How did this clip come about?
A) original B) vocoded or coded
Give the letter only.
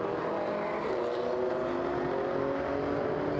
A